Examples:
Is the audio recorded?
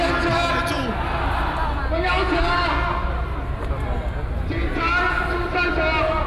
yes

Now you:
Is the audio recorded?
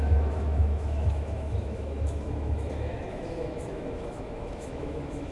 no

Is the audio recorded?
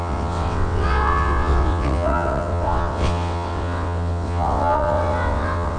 no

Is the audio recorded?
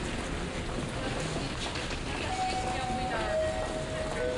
yes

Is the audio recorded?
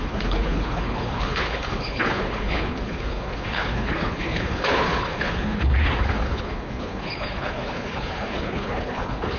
no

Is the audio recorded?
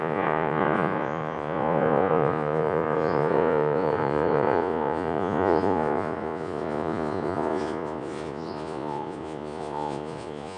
no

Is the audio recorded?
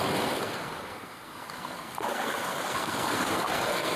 no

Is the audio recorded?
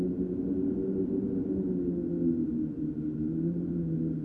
yes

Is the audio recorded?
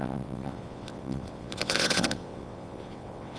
no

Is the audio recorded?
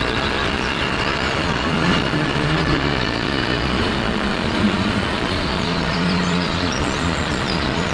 no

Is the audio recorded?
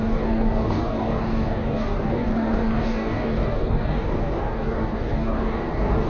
no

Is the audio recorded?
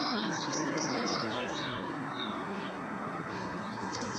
no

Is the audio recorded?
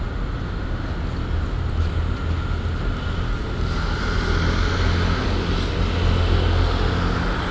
yes